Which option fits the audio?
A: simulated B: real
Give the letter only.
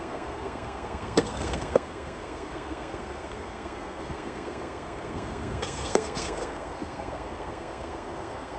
A